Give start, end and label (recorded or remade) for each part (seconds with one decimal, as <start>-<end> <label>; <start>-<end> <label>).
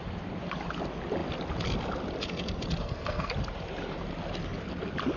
0.0-2.8 recorded; 2.8-3.3 remade; 3.3-5.2 recorded